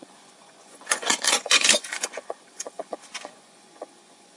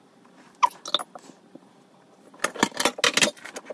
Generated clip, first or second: first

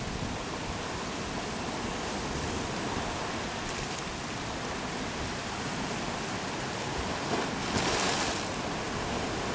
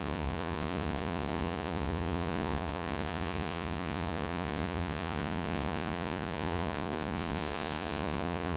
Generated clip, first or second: second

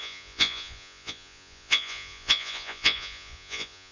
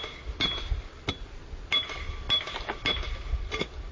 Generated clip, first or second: first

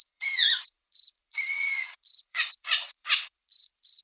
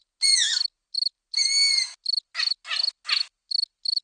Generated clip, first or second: first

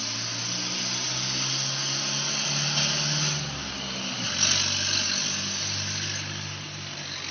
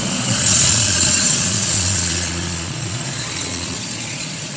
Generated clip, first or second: second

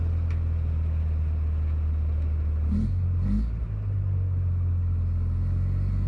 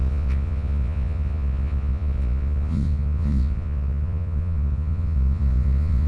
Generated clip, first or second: second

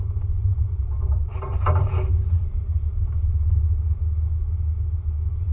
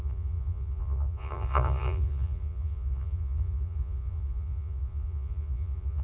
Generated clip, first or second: second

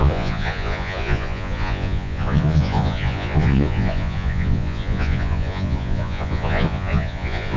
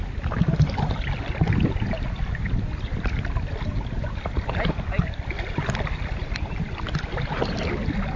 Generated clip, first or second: first